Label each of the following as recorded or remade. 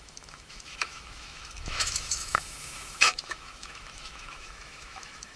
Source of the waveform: remade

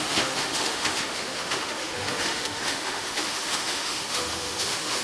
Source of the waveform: remade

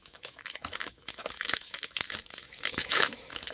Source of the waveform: remade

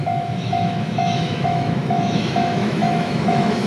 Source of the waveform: remade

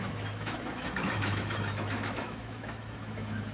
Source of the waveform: remade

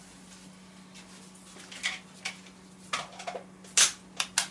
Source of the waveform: recorded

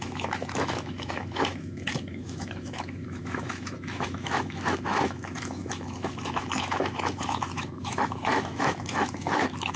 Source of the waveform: remade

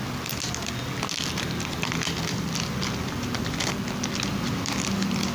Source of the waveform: recorded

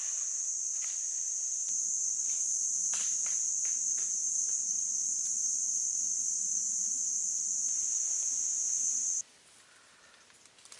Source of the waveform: recorded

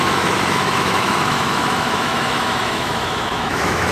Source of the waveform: remade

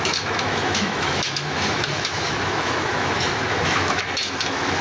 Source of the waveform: remade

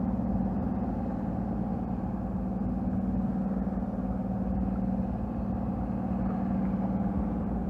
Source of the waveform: recorded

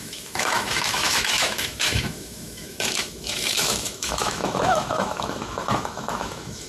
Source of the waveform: remade